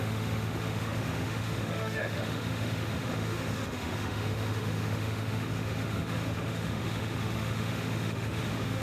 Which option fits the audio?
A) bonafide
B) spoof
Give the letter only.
B